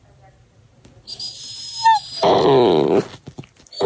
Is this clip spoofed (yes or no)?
yes